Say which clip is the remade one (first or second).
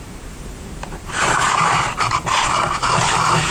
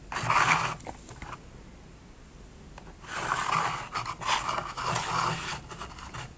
first